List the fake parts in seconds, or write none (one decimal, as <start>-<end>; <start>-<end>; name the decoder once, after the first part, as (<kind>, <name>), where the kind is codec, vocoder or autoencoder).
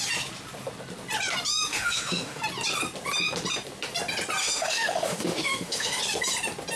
1.5-2.4 (autoencoder, DAC-VAE); 4.4-6.0